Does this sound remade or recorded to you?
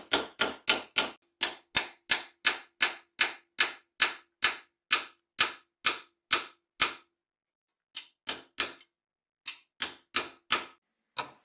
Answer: recorded